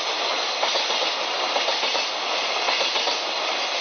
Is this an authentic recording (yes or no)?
yes